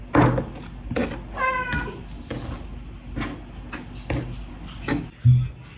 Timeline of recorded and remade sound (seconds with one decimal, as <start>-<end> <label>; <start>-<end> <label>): 0.0-5.8 recorded